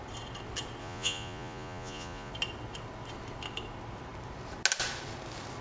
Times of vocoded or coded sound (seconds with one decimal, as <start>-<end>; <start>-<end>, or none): 0.8-2.3